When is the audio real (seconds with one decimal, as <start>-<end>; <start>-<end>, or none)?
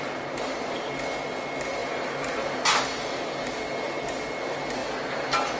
0.0-5.6